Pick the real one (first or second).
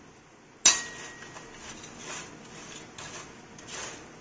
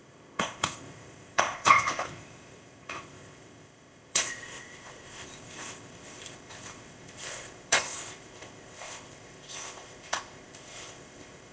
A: first